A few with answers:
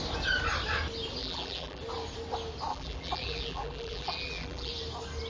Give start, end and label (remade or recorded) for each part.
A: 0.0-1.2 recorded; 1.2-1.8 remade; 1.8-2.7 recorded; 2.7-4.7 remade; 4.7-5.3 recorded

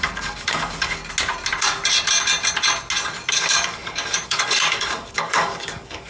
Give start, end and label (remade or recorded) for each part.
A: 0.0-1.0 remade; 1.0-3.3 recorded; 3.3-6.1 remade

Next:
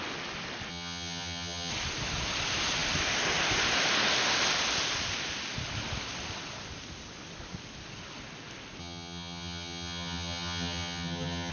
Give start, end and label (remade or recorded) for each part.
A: 0.0-0.7 recorded; 0.7-1.7 remade; 1.7-8.8 recorded; 8.8-11.5 remade

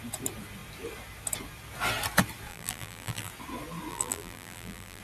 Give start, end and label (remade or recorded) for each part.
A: 0.0-2.5 recorded; 2.5-3.3 remade; 3.3-3.9 recorded; 3.9-5.0 remade

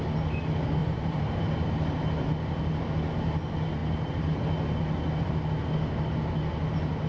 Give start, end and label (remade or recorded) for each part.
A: 0.0-0.8 recorded; 0.8-1.7 remade; 1.7-3.8 recorded; 3.8-4.4 remade; 4.4-7.1 recorded